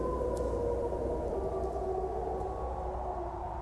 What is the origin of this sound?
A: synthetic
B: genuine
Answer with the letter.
B